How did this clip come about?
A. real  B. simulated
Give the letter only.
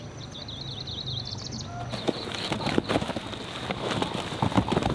A